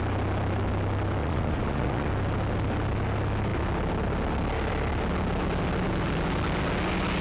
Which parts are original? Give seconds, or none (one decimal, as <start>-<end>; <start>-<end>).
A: 0.0-1.2; 2.1-7.2